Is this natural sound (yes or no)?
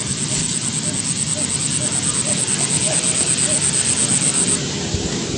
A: yes